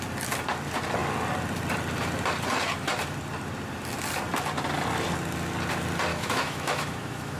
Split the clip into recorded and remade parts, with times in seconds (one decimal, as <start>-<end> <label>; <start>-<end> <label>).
0.0-6.1 recorded; 6.1-7.4 remade